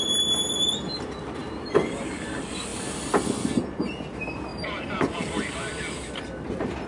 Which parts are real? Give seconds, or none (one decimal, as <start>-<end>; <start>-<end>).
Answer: 0.0-1.4; 2.1-2.7; 3.3-4.5; 5.7-6.9